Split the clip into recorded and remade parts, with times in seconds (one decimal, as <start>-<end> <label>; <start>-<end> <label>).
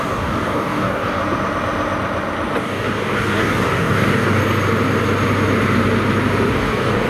0.0-1.2 remade; 1.2-2.6 recorded; 2.6-4.4 remade; 4.4-6.5 recorded; 6.5-7.1 remade